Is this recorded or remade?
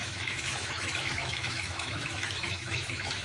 remade